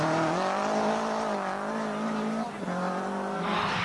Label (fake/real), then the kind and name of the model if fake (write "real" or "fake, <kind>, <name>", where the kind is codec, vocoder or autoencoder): real